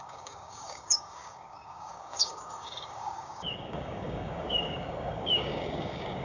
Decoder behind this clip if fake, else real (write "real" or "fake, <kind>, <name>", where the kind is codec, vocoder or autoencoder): fake, codec, DAC